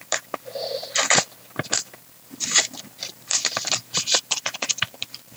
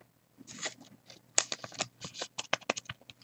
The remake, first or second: first